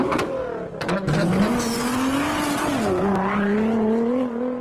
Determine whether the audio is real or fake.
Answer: real